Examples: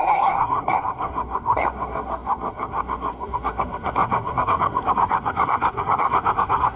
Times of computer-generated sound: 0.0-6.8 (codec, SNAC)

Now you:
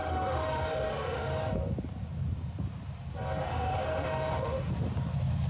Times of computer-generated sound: 0.0-1.5 (autoencoder, DAC-VAE); 3.4-4.7

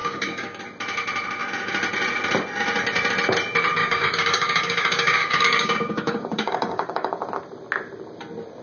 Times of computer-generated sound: 0.0-0.6 (codec, DAC); 3.8-7.2

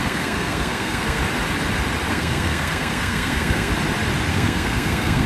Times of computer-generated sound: 0.0-1.2 (codec, SNAC); 2.1-3.7; 4.3-5.3

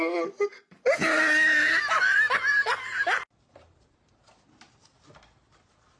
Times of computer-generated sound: none

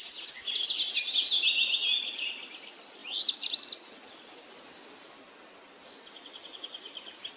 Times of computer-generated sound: none